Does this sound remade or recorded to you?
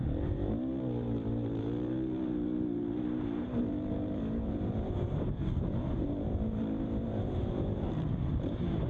remade